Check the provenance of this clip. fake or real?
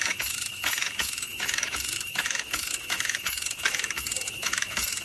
fake